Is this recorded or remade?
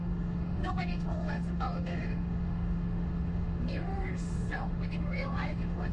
remade